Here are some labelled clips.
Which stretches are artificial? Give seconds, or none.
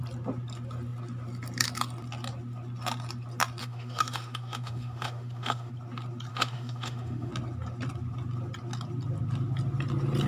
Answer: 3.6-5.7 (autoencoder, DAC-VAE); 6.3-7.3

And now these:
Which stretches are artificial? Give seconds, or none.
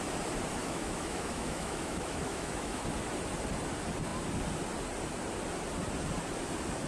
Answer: 0.6-2.8 (autoencoder, DAC-VAE)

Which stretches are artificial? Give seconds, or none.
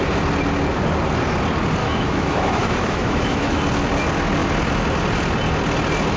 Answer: 1.8-3.6 (autoencoder, DAC-VAE)